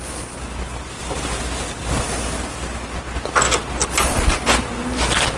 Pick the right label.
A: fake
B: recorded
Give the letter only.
B